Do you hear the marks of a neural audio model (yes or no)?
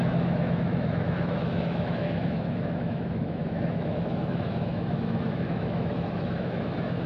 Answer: yes